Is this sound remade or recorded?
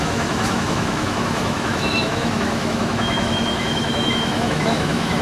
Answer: remade